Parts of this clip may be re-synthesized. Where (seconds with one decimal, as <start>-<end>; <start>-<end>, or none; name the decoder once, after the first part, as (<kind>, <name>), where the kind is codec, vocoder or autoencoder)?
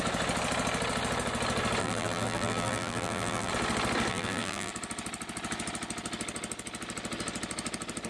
1.8-3.5 (vocoder, BigVGAN v2); 4.1-4.7